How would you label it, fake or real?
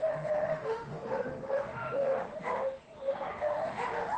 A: fake